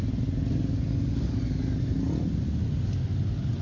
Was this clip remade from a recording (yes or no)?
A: no